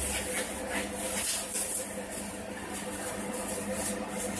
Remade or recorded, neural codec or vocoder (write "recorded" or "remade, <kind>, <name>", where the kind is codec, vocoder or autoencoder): recorded